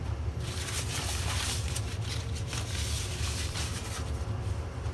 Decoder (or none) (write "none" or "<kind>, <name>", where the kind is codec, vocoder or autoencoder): vocoder, BigVGAN v2